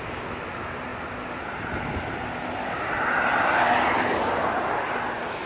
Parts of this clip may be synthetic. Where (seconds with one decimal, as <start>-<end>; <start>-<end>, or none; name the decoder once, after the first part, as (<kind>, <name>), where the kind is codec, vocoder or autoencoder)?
none